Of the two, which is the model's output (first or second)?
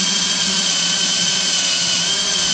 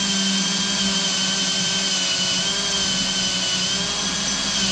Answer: first